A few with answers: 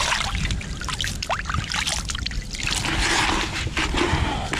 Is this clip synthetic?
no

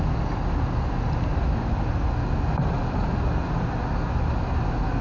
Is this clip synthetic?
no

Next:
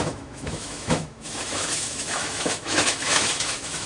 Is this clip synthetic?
yes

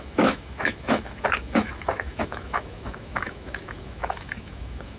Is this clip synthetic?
yes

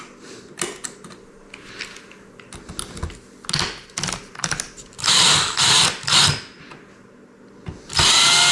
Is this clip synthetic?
no